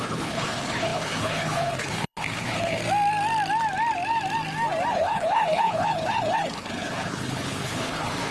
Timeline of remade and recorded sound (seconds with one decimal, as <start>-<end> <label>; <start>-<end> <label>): 0.0-2.8 remade; 2.8-4.9 recorded; 4.9-8.3 remade